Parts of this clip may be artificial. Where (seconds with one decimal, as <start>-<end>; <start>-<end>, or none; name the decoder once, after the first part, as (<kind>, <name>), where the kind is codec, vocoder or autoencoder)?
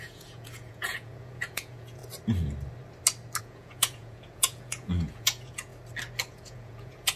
0.0-2.0 (vocoder, Vocos); 3.4-5.7; 6.3-7.2